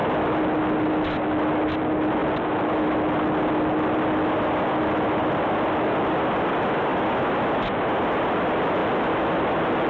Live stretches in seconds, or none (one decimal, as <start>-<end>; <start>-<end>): 0.0-9.9